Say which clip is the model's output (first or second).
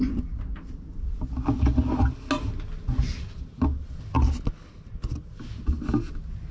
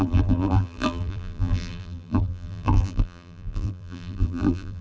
second